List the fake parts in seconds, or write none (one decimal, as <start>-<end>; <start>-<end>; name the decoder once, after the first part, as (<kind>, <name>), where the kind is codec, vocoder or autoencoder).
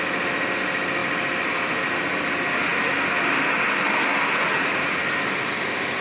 4.5-5.0 (vocoder, Vocos)